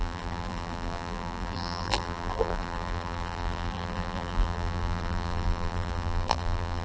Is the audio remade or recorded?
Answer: remade